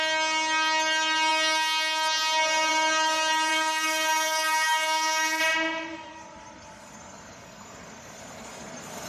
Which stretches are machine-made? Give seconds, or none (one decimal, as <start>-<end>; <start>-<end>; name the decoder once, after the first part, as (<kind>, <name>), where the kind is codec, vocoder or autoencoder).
3.5-5.4 (codec, DAC); 6.1-9.1

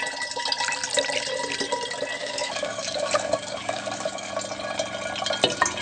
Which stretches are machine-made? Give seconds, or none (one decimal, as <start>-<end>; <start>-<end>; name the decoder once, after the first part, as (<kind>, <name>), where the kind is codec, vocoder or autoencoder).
2.2-4.3 (codec, DAC)

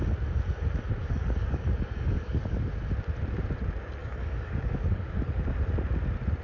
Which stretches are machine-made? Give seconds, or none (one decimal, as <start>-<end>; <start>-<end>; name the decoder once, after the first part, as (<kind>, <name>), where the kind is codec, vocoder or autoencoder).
1.0-2.7 (codec, DAC); 4.0-5.4

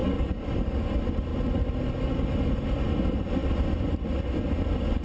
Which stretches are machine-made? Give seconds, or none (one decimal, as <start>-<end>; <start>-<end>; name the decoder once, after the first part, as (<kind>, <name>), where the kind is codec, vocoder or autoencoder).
0.0-0.8 (codec, DAC)